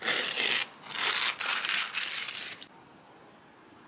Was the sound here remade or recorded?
recorded